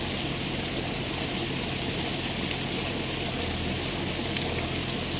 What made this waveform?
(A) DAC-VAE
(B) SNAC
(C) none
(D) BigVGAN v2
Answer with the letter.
C